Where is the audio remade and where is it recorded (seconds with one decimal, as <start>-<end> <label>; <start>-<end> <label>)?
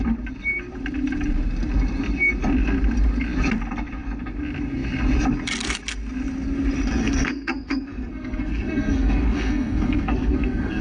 0.0-7.0 recorded; 7.0-10.8 remade